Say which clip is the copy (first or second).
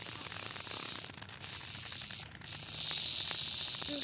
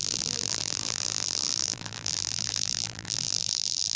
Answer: second